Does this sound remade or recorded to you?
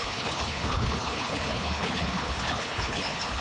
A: remade